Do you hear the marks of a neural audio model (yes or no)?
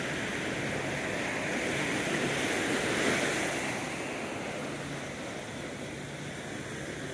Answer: no